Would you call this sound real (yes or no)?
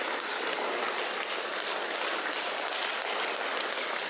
yes